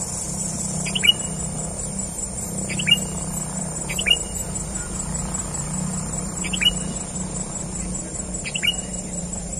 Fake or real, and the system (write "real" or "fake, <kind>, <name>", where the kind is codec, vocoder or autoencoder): fake, vocoder, BigVGAN v2